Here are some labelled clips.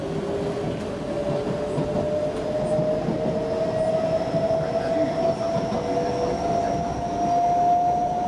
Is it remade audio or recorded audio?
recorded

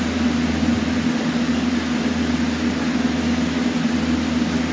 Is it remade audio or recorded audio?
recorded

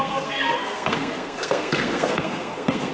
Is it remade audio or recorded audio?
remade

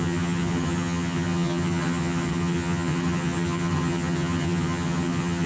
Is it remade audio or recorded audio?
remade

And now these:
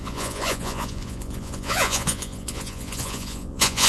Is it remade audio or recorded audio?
remade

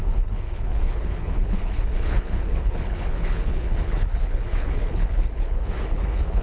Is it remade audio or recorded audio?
remade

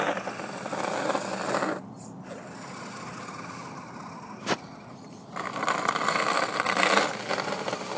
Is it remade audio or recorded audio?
recorded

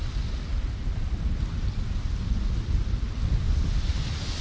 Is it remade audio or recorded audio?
recorded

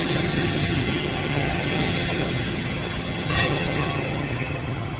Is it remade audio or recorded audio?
remade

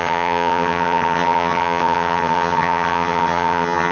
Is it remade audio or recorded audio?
remade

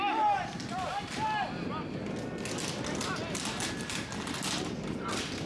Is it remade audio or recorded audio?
recorded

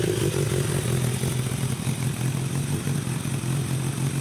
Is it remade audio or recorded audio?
remade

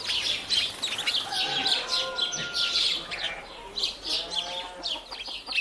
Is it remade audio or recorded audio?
recorded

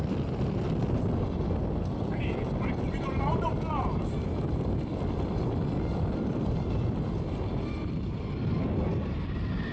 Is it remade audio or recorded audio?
recorded